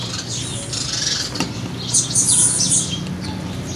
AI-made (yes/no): no